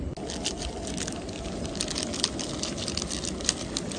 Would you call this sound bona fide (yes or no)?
yes